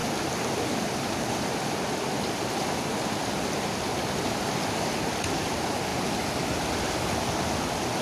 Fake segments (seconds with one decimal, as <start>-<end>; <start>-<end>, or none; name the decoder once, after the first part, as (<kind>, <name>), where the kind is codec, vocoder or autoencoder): 0.0-4.6 (vocoder, BigVGAN v2)